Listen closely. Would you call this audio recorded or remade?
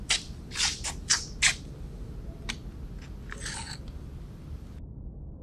recorded